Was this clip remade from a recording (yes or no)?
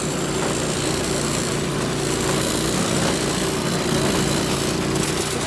no